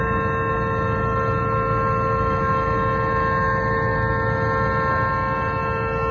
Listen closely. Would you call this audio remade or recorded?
recorded